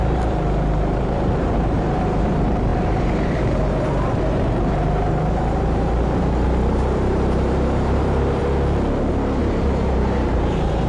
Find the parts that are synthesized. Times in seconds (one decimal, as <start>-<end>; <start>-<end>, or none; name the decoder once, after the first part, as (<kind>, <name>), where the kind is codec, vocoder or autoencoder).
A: 0.0-8.4 (vocoder, BigVGAN v2); 9.1-10.9